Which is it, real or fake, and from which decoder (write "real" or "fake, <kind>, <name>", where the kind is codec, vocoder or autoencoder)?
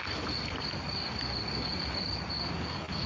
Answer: real